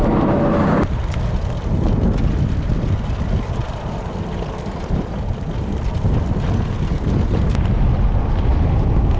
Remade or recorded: recorded